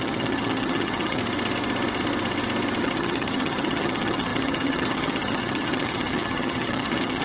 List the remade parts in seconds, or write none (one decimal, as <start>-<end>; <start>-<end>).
0.0-1.2; 2.8-7.2